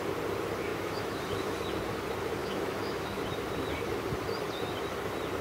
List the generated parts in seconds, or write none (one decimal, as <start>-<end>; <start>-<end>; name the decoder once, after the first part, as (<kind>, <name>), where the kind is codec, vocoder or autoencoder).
0.7-1.2 (autoencoder, DAC-VAE); 2.4-3.2